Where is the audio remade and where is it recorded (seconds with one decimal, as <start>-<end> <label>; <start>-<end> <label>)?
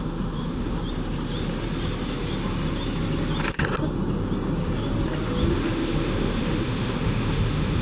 0.0-0.8 remade; 0.8-5.5 recorded; 5.5-7.8 remade